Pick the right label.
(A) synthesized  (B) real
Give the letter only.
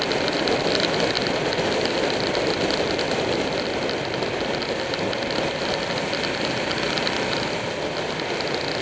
B